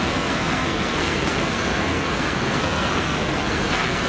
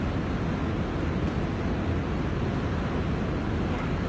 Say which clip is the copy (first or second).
first